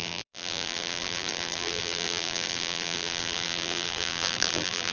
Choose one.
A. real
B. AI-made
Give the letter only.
B